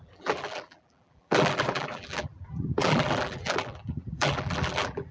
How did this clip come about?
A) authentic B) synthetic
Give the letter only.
B